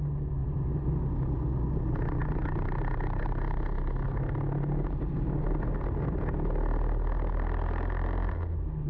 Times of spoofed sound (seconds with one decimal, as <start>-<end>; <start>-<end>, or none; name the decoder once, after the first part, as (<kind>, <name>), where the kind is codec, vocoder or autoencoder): 0.4-0.9 (vocoder, BigVGAN v2)